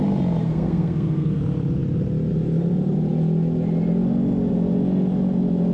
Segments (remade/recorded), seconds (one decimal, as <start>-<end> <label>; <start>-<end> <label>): 0.0-0.4 recorded; 0.4-1.4 remade; 1.4-5.7 recorded